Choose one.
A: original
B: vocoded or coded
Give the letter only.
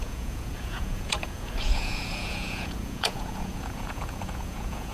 B